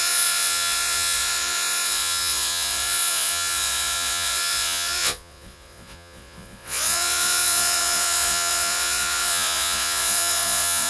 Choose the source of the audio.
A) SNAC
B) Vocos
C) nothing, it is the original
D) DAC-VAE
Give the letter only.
B